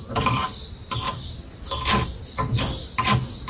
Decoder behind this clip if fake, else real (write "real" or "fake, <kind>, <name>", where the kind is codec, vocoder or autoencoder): real